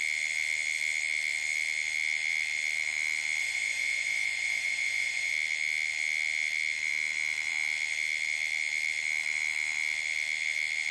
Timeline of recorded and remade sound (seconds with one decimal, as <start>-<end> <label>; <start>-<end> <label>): 0.0-3.4 recorded; 3.4-5.3 remade; 5.3-10.9 recorded